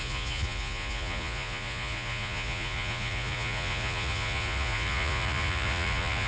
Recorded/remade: remade